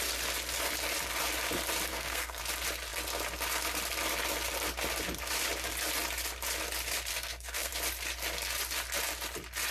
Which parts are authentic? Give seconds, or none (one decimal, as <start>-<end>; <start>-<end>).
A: 0.0-1.9; 2.4-7.1; 7.7-9.7

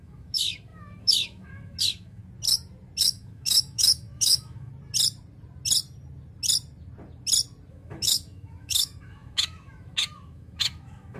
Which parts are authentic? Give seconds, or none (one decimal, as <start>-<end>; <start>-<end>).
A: 2.2-3.0; 4.7-7.7

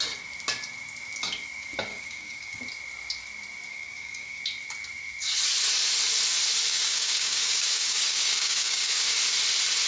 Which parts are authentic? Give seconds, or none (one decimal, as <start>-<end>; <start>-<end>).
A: 0.0-1.9; 2.6-3.7; 4.4-6.7; 9.2-9.9

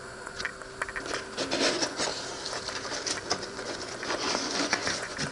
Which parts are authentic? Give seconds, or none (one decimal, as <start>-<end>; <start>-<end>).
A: 0.5-1.7; 2.1-3.3

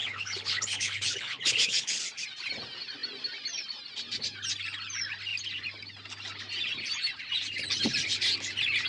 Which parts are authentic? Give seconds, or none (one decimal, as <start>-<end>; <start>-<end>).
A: 2.0-8.9

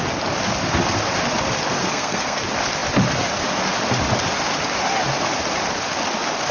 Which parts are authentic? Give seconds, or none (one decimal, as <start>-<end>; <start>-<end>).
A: 0.0-1.8; 2.4-6.5

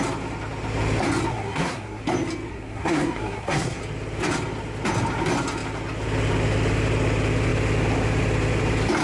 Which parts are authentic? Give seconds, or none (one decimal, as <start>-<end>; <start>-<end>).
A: 0.0-1.3; 2.0-2.5; 3.8-9.0